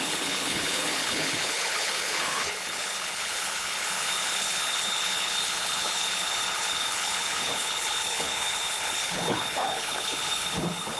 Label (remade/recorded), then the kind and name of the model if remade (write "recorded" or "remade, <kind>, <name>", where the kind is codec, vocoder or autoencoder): remade, codec, HILCodec